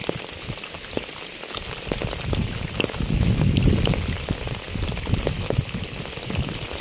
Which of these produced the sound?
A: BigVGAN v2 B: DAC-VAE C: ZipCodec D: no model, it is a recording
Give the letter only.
D